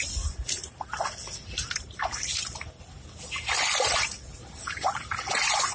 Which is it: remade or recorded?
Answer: recorded